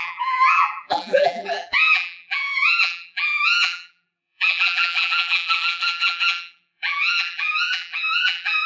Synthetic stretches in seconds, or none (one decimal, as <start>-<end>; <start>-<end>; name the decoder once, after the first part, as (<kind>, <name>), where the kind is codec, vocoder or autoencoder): 0.0-8.7 (vocoder, BigVGAN v2)